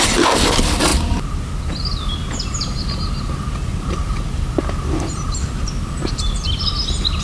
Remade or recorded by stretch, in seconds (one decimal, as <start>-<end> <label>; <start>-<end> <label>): 0.0-7.2 recorded